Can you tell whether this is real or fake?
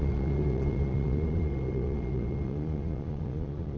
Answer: fake